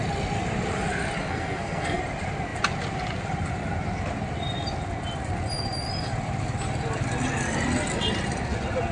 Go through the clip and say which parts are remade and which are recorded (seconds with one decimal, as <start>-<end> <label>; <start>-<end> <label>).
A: 0.0-1.2 recorded; 1.2-2.0 remade; 2.0-8.9 recorded